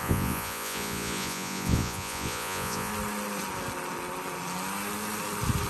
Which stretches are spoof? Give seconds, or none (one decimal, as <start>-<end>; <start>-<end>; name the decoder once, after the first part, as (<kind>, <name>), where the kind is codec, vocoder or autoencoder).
0.0-2.9 (vocoder, Vocos)